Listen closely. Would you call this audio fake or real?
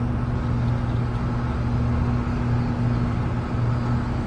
real